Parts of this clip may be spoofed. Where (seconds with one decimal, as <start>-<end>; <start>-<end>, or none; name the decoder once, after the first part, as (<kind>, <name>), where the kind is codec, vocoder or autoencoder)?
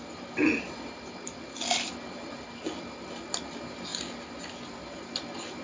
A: none